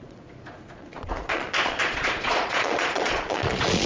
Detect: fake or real fake